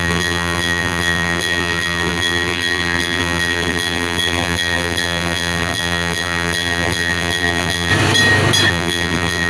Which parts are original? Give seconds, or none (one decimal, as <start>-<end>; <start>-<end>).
7.9-8.7